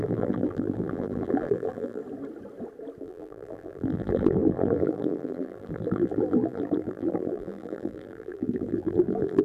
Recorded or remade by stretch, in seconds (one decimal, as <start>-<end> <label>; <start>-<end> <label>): 0.0-2.0 remade; 2.0-3.0 recorded; 3.0-9.4 remade